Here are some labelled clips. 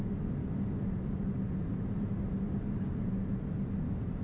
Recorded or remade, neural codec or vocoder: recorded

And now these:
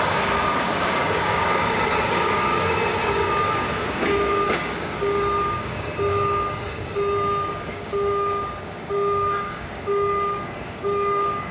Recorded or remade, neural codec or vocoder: remade, codec, DAC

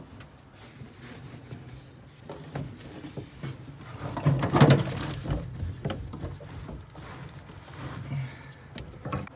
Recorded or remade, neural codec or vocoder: recorded